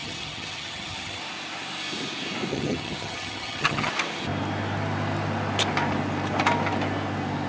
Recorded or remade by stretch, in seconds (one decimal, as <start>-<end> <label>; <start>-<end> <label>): 0.0-1.2 remade; 1.2-2.5 recorded; 2.5-3.9 remade; 3.9-7.5 recorded